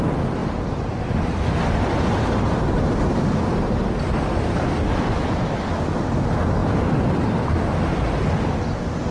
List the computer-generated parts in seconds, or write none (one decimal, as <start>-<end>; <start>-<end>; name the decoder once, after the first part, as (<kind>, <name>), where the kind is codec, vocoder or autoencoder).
0.4-4.7 (vocoder, BigVGAN v2)

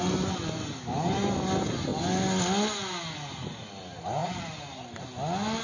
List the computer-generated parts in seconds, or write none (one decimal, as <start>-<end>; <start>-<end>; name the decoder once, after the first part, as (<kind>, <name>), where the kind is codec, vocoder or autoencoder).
none

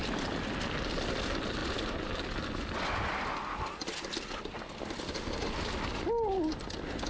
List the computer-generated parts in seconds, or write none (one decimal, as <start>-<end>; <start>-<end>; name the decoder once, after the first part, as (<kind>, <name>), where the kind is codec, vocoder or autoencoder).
none

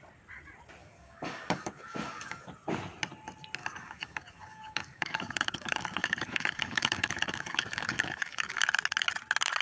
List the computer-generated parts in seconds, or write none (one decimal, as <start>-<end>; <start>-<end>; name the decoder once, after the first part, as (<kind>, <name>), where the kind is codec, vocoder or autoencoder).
0.8-2.5 (codec, DAC); 3.6-8.6

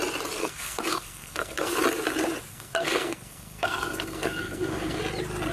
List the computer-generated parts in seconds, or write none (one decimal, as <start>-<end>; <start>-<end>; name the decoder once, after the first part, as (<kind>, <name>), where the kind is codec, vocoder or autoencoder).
0.4-1.7 (codec, SNAC); 2.5-5.0

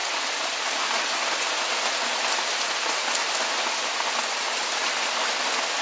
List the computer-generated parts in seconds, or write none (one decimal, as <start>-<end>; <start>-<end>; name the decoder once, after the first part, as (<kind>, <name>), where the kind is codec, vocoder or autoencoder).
none